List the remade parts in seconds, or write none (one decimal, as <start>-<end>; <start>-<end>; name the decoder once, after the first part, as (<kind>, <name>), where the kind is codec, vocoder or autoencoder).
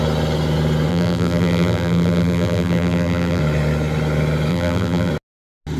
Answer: 0.9-3.4 (vocoder, BigVGAN v2); 4.5-5.1